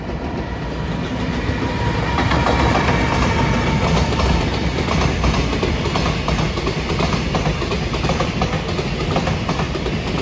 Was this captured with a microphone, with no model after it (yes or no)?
yes